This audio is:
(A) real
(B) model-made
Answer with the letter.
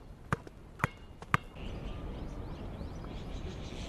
A